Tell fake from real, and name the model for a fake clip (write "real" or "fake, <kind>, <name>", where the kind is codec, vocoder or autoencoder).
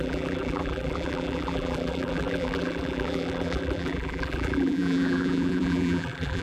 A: fake, vocoder, BigVGAN v2